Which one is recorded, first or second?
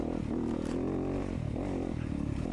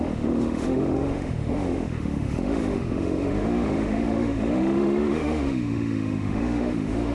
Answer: first